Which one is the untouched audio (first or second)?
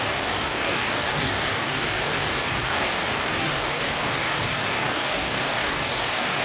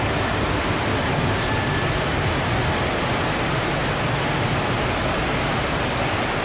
second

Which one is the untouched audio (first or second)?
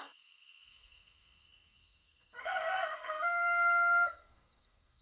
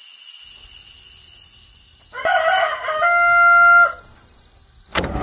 second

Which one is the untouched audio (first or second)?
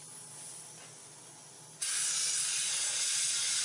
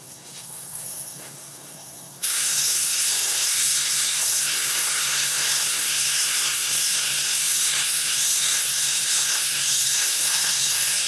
first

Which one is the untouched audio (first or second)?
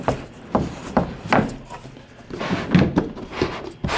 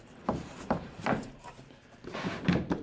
first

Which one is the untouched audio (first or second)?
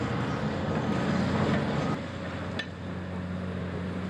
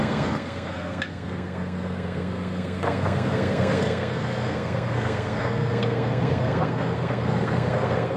first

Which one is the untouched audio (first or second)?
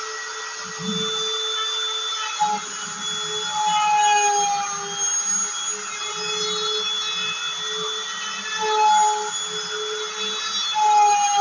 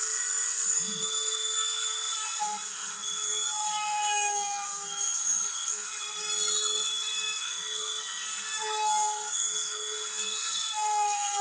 first